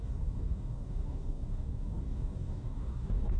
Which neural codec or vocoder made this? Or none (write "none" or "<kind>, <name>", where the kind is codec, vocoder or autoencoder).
codec, DAC